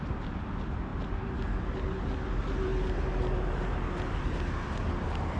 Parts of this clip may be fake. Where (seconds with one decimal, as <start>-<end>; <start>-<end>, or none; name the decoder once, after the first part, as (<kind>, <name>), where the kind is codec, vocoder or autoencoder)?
none